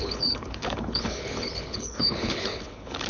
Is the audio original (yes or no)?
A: no